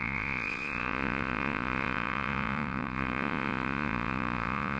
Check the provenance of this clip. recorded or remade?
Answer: remade